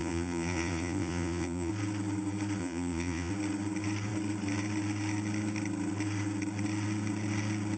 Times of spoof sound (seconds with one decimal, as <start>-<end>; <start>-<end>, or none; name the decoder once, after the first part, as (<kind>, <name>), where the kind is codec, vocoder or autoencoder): 0.0-1.7 (vocoder, Vocos); 2.6-3.3